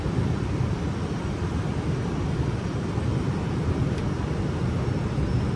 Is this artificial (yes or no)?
no